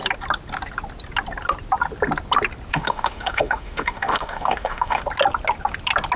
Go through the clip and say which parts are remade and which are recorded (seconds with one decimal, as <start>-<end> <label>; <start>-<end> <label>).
0.0-2.7 recorded; 2.7-5.0 remade; 5.0-6.2 recorded